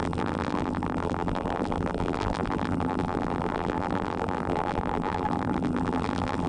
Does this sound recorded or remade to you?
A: remade